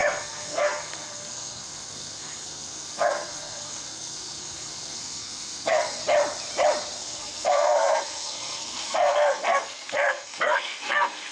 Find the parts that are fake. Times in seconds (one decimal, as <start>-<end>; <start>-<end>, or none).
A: 0.0-6.0; 7.0-11.3